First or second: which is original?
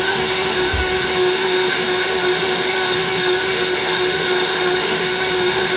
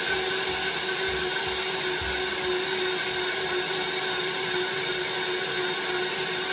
second